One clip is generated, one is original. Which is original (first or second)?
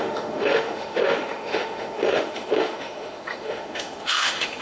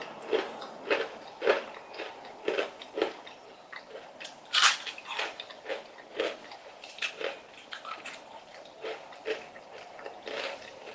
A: second